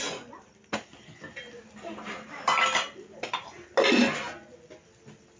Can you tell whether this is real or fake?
real